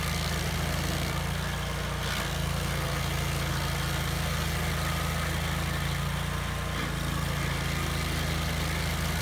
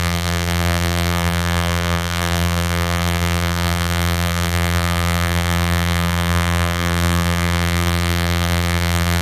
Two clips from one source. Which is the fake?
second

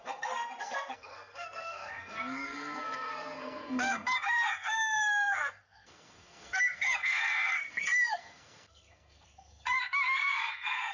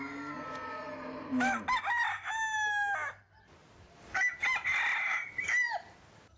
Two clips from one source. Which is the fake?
first